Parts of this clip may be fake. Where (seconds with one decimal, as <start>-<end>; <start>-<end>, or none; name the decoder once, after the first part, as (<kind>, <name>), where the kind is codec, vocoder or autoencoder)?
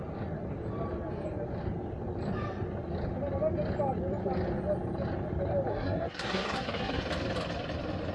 5.7-7.0 (codec, SNAC)